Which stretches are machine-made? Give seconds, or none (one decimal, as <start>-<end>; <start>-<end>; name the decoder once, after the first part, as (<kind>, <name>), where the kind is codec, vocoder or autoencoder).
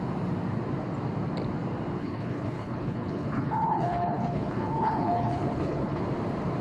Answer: 2.0-6.0 (codec, HILCodec)